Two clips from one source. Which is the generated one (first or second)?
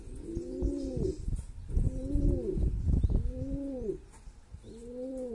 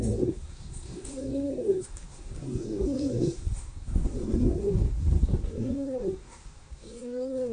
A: second